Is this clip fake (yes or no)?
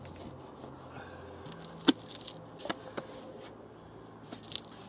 no